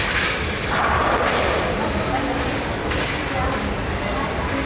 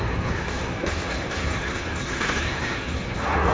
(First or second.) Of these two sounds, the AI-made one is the second